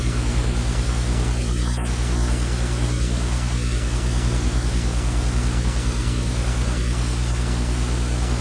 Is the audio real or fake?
fake